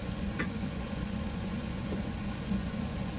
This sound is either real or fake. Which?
fake